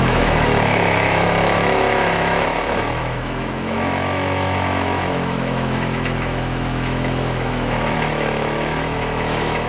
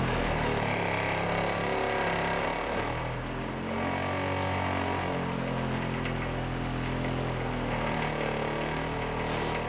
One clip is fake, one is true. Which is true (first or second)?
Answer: second